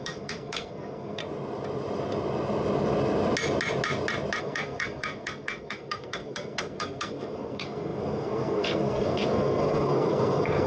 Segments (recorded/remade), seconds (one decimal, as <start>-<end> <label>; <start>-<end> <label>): 0.0-1.2 remade; 1.2-4.4 recorded; 4.4-10.7 remade